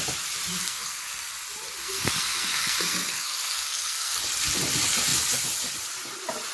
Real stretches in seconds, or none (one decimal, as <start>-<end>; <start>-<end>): 0.0-0.6; 1.3-1.8; 4.2-6.5